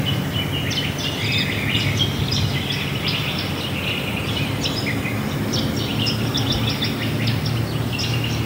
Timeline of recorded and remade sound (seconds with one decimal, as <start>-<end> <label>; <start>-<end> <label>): 0.0-5.9 recorded; 5.9-6.5 remade; 6.5-8.5 recorded